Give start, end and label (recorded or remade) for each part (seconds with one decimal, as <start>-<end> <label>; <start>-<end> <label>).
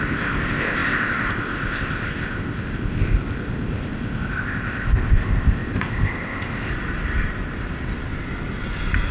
0.0-6.7 remade; 6.7-9.1 recorded